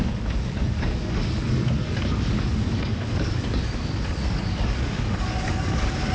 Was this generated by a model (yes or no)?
yes